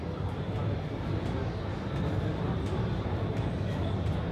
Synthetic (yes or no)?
no